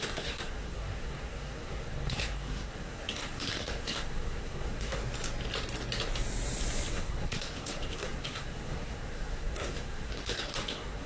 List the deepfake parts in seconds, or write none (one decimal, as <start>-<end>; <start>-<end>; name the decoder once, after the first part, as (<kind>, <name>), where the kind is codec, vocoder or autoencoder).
0.0-5.0 (codec, SNAC); 6.9-11.1